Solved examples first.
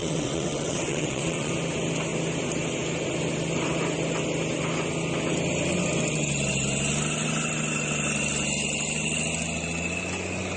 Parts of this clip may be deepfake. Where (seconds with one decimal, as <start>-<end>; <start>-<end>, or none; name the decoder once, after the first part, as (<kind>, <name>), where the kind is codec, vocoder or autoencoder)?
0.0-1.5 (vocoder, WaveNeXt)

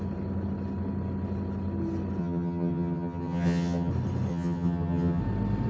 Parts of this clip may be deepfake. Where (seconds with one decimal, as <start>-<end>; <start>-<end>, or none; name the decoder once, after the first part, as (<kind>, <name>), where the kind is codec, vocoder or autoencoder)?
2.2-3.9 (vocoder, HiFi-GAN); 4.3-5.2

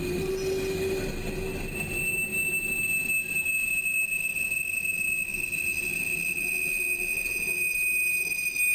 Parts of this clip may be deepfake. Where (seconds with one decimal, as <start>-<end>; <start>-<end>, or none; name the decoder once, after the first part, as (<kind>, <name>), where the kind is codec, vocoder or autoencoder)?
none

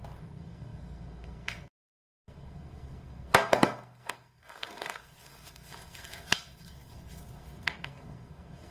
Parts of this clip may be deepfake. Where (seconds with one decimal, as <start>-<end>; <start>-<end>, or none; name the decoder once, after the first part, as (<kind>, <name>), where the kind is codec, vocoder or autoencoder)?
0.0-8.7 (codec, SNAC)

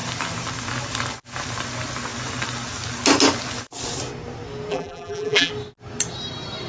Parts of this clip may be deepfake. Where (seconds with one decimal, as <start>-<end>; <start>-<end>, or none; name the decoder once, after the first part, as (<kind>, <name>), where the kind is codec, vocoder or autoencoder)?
4.7-5.5 (vocoder, BigVGAN v2)

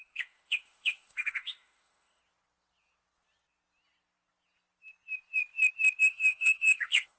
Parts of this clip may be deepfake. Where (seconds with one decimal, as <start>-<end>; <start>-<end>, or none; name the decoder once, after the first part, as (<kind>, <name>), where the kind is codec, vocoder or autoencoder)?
0.0-2.2 (autoencoder, DAC-VAE); 6.0-7.2

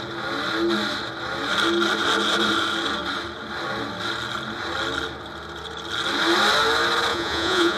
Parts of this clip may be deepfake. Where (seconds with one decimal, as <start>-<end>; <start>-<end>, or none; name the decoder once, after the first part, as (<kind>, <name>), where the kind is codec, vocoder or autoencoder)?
7.1-7.8 (vocoder, Vocos)

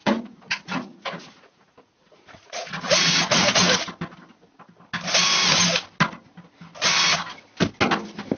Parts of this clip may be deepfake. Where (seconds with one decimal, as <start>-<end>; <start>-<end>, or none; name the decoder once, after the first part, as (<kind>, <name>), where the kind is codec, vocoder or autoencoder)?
0.0-3.8 (vocoder, Vocos)